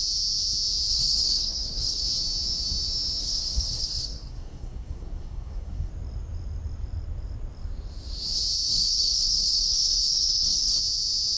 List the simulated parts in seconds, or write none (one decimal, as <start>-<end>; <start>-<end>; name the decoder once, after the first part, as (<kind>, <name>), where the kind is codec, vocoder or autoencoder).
0.9-2.0 (codec, SNAC); 3.2-5.9; 8.7-10.8